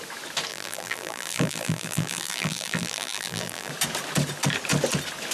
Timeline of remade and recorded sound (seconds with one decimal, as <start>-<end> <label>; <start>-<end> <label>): 0.0-0.5 recorded; 0.5-3.7 remade; 3.7-5.3 recorded